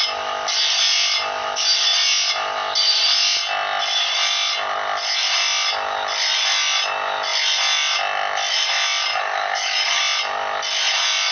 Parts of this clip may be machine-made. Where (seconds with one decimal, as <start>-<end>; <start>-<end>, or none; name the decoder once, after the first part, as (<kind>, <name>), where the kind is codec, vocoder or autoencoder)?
9.1-10.0 (codec, DAC)